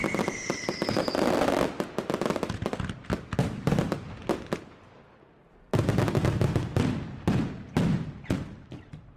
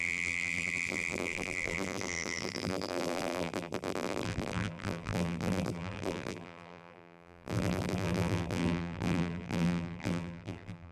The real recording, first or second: first